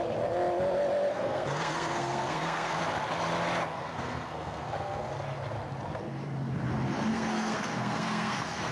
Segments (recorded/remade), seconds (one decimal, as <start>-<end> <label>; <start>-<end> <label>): 0.0-1.1 recorded; 1.1-2.8 remade; 2.8-3.7 recorded; 3.7-5.1 remade; 5.1-7.1 recorded; 7.1-8.7 remade